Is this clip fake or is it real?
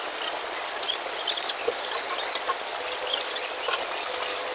real